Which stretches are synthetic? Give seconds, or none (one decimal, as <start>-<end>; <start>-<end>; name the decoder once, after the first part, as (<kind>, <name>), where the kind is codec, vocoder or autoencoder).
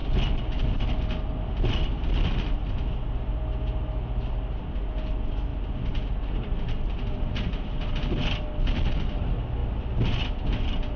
none